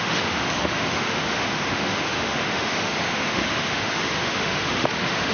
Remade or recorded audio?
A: remade